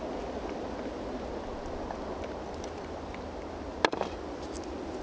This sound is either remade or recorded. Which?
recorded